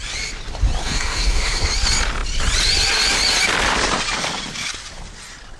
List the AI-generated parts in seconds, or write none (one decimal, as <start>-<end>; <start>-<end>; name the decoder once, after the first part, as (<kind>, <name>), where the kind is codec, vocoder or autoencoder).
0.8-1.7 (codec, SNAC)